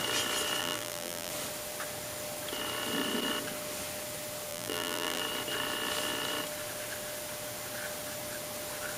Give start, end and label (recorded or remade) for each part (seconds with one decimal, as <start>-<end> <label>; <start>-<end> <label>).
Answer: 0.0-0.6 recorded; 0.6-1.3 remade; 1.3-4.5 recorded; 4.5-5.2 remade; 5.2-9.0 recorded